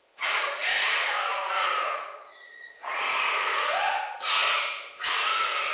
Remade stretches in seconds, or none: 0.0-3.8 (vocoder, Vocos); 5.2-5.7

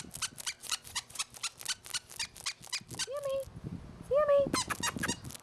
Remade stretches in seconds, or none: 0.6-1.2 (vocoder, Vocos)